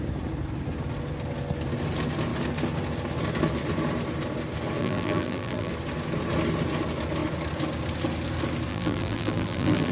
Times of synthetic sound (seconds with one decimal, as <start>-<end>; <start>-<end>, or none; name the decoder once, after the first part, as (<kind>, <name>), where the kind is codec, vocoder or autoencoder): 4.8-5.7 (vocoder, BigVGAN v2); 8.7-9.9